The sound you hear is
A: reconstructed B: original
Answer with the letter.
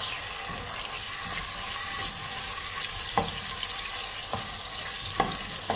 B